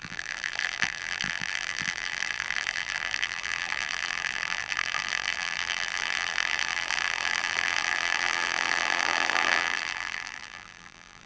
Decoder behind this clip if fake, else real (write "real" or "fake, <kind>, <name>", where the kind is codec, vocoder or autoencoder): fake, vocoder, BigVGAN v2